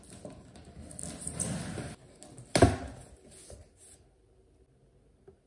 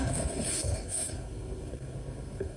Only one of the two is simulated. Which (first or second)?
second